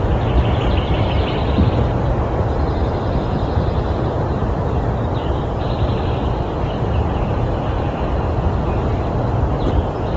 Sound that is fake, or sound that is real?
real